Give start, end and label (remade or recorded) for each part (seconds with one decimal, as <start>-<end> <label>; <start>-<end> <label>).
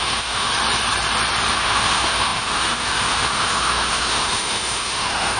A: 0.0-0.5 remade; 0.5-1.5 recorded; 1.5-5.4 remade